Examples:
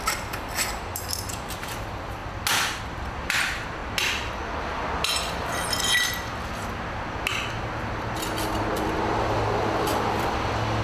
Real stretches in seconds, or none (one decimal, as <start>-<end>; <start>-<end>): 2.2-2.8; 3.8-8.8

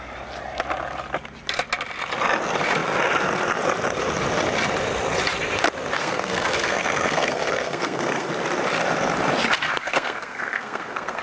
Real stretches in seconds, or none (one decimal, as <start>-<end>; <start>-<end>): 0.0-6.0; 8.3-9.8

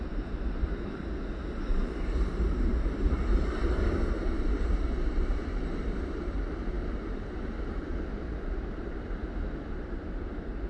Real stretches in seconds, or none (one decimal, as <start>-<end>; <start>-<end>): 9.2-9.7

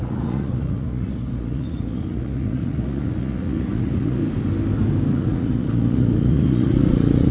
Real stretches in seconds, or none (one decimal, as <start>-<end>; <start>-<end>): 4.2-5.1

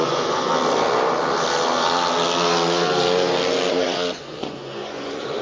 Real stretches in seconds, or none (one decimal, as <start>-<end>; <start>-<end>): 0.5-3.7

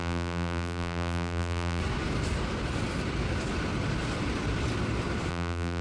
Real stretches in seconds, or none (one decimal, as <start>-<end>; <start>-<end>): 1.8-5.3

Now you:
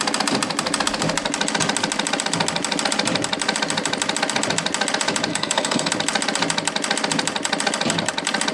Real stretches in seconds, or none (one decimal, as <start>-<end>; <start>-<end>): 0.0-5.3; 5.9-8.5